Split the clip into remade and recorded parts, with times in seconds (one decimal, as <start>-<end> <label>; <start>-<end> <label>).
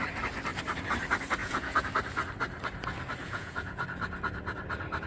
0.0-1.4 recorded; 1.4-1.9 remade; 1.9-3.2 recorded; 3.2-3.8 remade; 3.8-5.1 recorded